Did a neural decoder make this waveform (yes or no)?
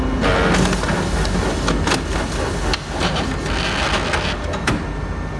no